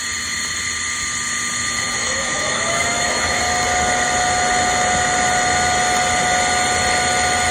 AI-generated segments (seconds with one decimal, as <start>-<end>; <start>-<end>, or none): 2.0-3.4